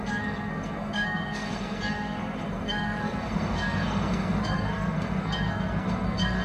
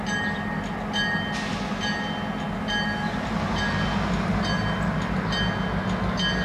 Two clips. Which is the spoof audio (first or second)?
first